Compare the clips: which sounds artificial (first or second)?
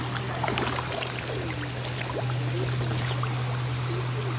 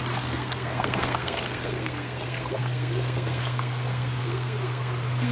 second